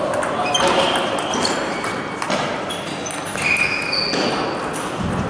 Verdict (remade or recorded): recorded